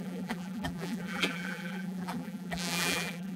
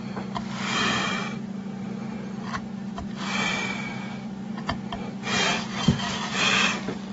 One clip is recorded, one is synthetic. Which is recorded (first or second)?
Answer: second